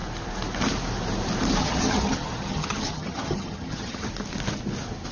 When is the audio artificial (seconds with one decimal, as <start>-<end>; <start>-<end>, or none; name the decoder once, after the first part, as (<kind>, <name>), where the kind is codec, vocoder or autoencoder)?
1.6-4.1 (vocoder, HiFi-GAN)